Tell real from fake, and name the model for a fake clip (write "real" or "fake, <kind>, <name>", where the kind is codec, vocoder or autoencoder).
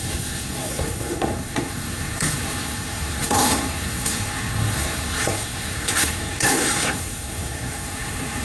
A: fake, codec, SNAC